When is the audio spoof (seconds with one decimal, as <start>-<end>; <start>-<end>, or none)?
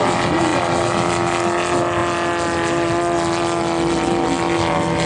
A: none